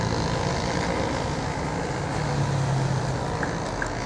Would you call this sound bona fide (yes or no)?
yes